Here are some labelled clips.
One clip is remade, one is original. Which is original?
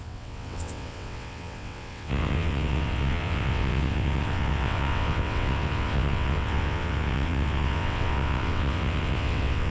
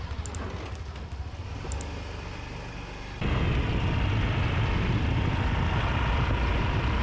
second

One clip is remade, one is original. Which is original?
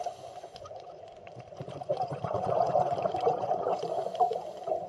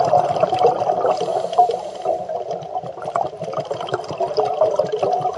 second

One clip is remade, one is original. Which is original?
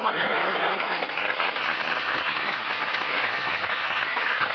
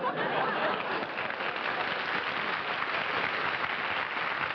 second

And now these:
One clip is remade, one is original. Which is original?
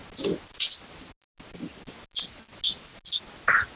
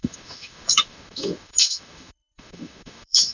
first